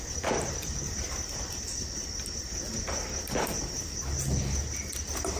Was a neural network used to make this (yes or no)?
no